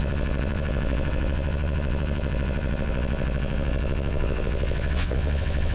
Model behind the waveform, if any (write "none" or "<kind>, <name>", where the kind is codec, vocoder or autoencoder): vocoder, WaveNeXt